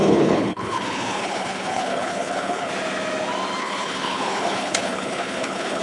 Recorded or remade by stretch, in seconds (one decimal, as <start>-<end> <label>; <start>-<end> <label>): 0.0-2.7 remade; 2.7-3.6 recorded; 3.6-5.8 remade